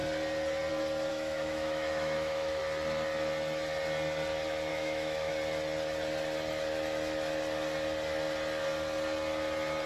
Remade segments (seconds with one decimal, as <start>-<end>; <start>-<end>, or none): 1.1-2.6; 4.7-5.3

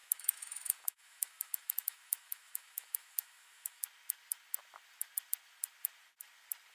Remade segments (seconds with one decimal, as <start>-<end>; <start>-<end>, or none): 0.0-3.8

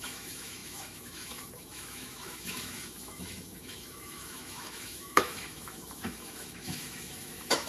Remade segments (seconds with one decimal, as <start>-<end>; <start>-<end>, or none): 0.0-7.7

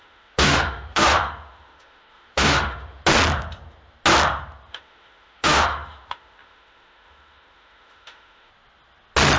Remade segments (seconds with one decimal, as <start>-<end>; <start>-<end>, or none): 0.0-3.0; 4.7-8.5

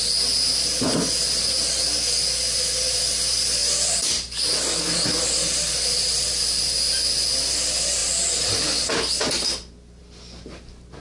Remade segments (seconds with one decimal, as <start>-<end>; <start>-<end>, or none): none

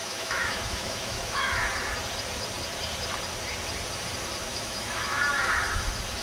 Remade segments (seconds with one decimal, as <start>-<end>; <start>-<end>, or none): 0.0-1.5; 4.5-5.2

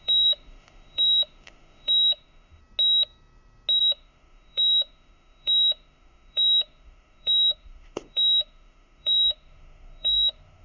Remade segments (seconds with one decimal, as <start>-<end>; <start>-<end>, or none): 0.0-2.6; 3.8-10.6